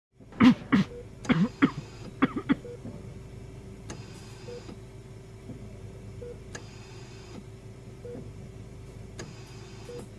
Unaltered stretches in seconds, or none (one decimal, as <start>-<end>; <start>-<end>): 0.0-10.2